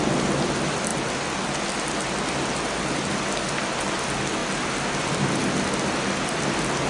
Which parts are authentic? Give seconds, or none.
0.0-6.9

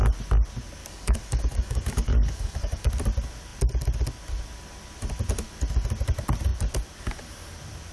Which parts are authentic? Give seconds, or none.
0.0-0.8; 2.9-7.9